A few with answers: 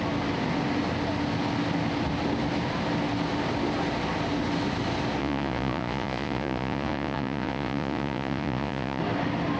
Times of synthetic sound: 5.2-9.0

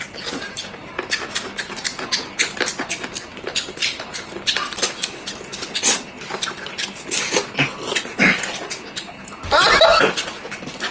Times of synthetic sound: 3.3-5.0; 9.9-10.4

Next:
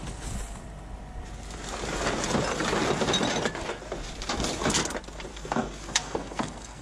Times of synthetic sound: 5.3-6.8

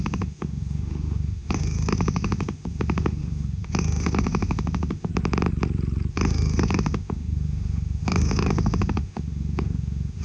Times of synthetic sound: 0.0-5.1; 6.1-10.2

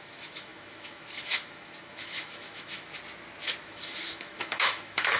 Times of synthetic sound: 0.0-2.9; 3.6-5.2

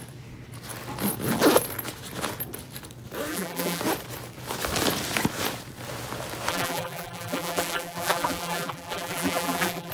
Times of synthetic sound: 3.3-3.8; 6.5-9.9

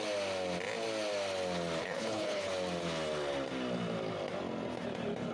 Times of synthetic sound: 1.8-2.5